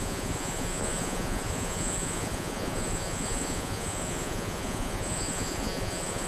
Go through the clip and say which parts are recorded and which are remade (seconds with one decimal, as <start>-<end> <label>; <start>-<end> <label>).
0.0-6.3 remade